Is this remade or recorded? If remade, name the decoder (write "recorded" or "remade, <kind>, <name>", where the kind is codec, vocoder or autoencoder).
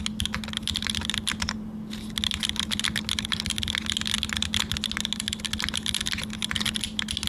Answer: recorded